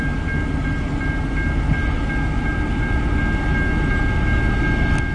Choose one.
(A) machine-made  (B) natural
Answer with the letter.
B